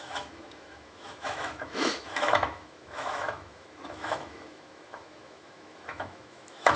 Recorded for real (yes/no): no